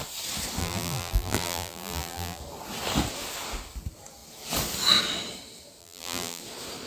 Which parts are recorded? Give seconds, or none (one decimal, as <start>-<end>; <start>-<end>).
0.0-0.6; 2.4-5.8; 6.4-6.9